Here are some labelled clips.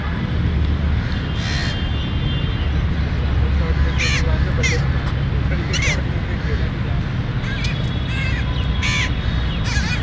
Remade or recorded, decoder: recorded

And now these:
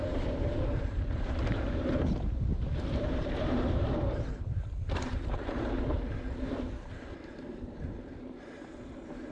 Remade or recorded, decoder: remade, vocoder, BigVGAN v2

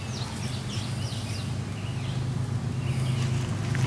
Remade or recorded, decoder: recorded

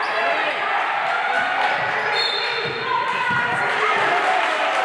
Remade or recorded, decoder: recorded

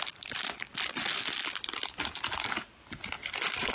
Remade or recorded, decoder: recorded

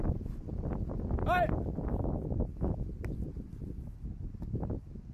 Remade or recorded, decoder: recorded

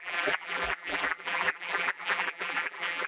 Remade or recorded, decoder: remade, vocoder, BigVGAN v2